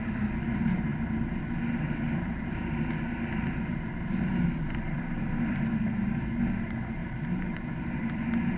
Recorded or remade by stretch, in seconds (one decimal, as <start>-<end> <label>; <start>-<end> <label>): 0.0-7.0 recorded; 7.0-8.2 remade; 8.2-8.6 recorded